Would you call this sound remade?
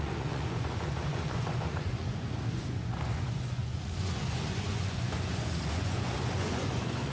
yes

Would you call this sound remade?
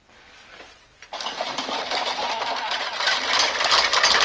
no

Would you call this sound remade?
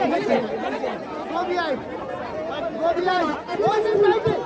no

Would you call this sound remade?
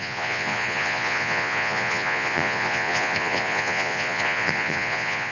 yes